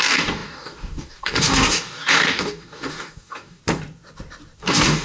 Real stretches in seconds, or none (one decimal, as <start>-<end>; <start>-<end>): 3.6-4.6